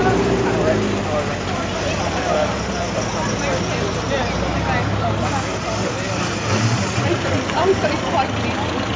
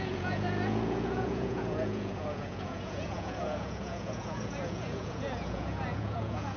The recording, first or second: first